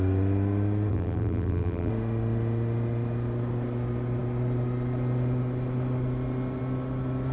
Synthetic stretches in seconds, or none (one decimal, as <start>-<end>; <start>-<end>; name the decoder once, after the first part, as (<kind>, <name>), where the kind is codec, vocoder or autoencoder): 0.9-1.9 (vocoder, BigVGAN v2)